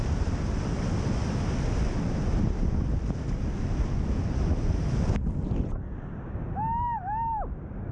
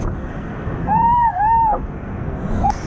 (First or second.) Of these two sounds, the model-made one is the second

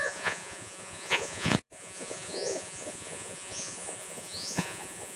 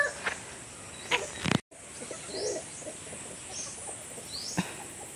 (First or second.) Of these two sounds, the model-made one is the first